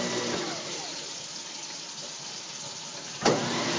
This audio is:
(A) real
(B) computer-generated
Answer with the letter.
A